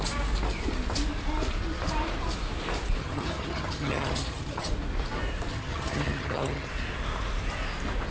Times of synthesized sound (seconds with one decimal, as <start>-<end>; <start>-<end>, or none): 3.0-4.7; 5.5-6.7